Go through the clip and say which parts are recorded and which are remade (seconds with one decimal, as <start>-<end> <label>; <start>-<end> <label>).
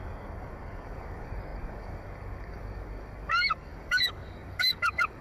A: 0.0-5.2 remade